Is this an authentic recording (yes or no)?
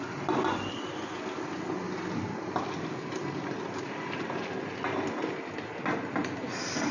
yes